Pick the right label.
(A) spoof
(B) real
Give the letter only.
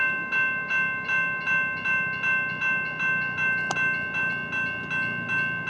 B